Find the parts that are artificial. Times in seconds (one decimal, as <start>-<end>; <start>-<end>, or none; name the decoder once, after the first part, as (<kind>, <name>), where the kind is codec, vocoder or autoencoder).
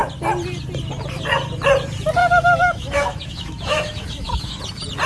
2.2-4.6 (autoencoder, DAC-VAE)